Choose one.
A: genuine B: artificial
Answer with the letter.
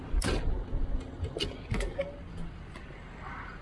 A